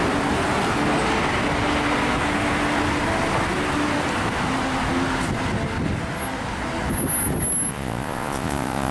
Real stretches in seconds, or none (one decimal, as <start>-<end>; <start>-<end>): 0.0-7.7